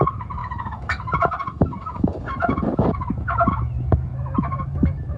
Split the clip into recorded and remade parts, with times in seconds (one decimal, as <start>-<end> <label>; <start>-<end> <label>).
0.0-5.2 remade